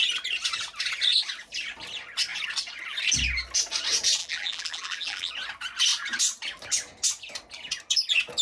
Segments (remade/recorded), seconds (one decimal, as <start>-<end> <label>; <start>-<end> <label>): 0.0-4.2 recorded; 4.2-5.3 remade; 5.3-8.4 recorded